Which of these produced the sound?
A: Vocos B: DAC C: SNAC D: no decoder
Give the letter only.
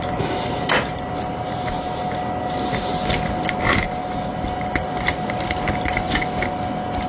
D